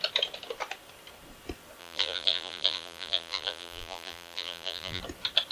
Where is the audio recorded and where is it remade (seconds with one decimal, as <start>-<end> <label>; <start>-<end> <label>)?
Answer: 0.0-1.8 recorded; 1.8-5.0 remade; 5.0-5.5 recorded